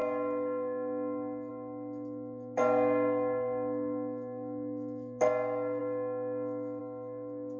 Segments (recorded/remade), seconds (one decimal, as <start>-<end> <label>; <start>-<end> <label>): 0.0-7.6 recorded